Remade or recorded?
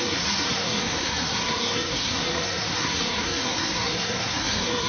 remade